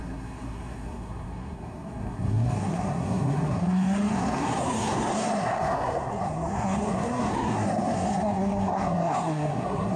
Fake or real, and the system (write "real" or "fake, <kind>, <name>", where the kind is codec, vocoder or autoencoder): fake, codec, SNAC